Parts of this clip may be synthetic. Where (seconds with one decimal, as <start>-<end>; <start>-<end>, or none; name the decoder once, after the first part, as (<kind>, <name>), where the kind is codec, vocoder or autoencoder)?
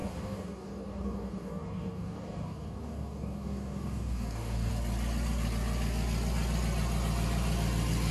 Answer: 0.0-4.7 (codec, DAC)